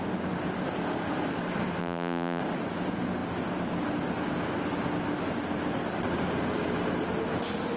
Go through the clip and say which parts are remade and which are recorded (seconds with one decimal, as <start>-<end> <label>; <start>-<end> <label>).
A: 0.0-1.8 recorded; 1.8-2.4 remade; 2.4-7.8 recorded

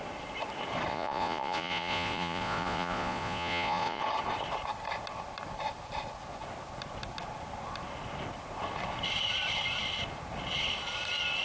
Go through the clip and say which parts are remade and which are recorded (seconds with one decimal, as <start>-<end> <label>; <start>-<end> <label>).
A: 0.0-0.9 recorded; 0.9-4.0 remade; 4.0-11.4 recorded

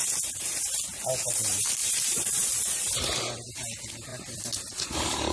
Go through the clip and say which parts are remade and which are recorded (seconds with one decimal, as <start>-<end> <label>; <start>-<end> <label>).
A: 0.0-1.8 recorded; 1.8-3.0 remade; 3.0-4.1 recorded; 4.1-4.6 remade; 4.6-5.3 recorded

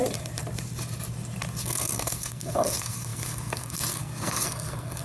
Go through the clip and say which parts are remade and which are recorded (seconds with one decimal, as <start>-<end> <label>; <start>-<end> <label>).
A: 0.0-1.6 recorded; 1.6-5.0 remade